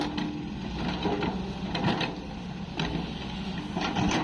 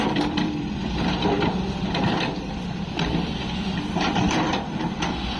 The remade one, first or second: second